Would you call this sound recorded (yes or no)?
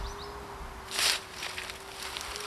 yes